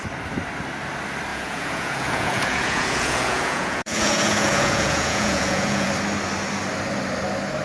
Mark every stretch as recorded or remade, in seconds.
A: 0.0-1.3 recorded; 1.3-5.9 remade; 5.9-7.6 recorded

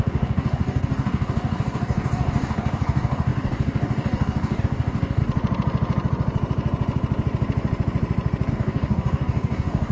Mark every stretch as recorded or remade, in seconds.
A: 0.0-5.2 remade; 5.2-8.5 recorded; 8.5-9.9 remade

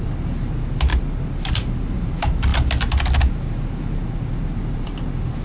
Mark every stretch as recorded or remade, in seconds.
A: 0.0-5.4 recorded

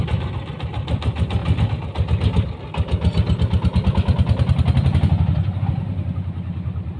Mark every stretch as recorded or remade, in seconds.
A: 0.0-7.0 recorded

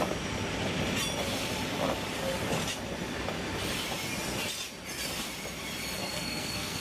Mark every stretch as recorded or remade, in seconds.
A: 0.0-6.0 recorded; 6.0-6.8 remade

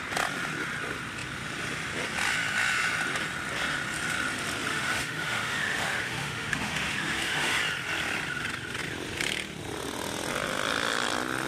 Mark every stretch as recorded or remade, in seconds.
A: 0.0-4.7 recorded; 4.7-7.6 remade; 7.6-11.5 recorded

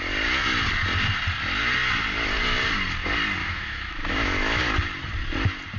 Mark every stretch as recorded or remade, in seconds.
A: 0.0-3.4 recorded; 3.4-4.6 remade; 4.6-5.8 recorded